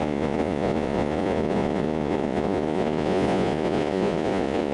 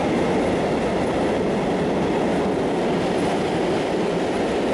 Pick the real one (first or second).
second